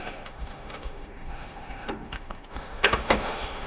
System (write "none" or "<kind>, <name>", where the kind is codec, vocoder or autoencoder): autoencoder, DAC-VAE